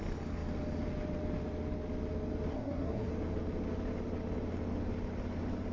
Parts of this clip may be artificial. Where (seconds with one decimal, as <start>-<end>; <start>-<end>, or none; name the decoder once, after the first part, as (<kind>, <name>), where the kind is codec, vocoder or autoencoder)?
2.5-3.1 (codec, SNAC)